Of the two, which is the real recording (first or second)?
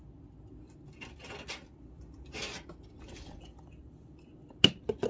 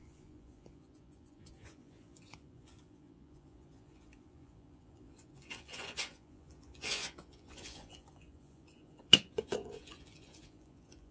first